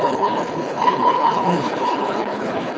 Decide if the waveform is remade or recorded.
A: remade